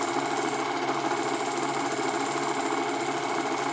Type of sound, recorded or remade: recorded